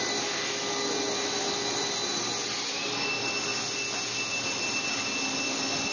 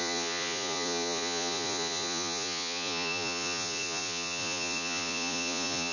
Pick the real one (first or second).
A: first